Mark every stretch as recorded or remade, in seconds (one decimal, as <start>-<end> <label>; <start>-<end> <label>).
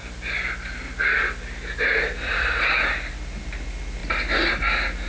0.0-5.1 recorded